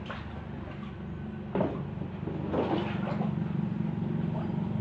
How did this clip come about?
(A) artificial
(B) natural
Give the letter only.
B